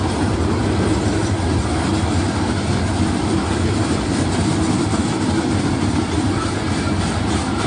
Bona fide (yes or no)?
yes